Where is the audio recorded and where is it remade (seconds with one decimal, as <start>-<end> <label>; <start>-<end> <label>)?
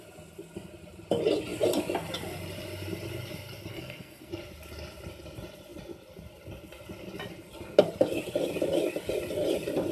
0.0-3.7 recorded; 3.7-4.3 remade; 4.3-9.9 recorded